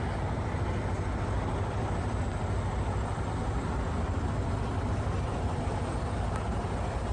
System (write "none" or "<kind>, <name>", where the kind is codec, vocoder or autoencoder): none